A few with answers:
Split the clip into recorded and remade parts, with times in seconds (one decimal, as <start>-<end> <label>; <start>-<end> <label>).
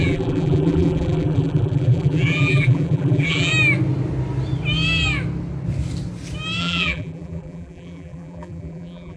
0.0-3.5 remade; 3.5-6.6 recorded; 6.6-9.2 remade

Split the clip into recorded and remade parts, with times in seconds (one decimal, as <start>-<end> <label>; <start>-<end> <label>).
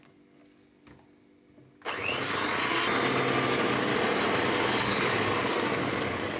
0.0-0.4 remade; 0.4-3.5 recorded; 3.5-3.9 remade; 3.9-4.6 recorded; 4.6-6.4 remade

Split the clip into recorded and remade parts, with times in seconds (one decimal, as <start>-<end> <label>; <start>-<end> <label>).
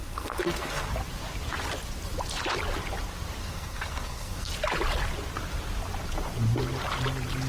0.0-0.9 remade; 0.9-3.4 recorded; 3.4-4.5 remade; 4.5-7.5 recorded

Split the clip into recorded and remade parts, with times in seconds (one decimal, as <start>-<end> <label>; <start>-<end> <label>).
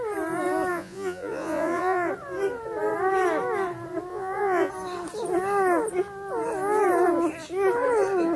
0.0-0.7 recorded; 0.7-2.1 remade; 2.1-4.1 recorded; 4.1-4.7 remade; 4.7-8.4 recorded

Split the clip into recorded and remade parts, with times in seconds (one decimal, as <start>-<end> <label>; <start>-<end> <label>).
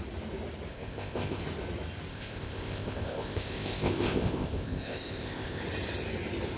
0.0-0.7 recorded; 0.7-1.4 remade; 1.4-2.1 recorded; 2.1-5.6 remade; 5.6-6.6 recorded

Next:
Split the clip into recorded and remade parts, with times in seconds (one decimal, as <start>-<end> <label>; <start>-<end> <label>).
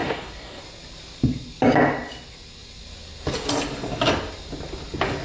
0.0-0.6 remade; 0.6-5.2 recorded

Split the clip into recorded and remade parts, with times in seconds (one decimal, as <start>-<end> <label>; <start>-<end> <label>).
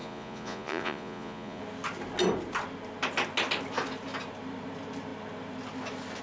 0.0-1.6 remade; 1.6-6.2 recorded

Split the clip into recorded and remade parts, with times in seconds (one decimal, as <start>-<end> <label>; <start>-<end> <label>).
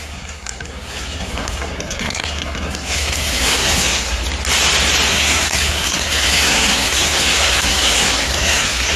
0.0-4.2 remade; 4.2-5.1 recorded; 5.1-9.0 remade